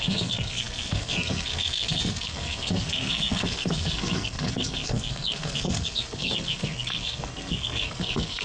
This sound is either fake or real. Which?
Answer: fake